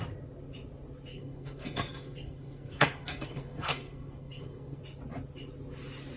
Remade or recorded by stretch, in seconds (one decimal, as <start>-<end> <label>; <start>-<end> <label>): 0.0-1.1 recorded; 1.1-4.8 remade; 4.8-6.2 recorded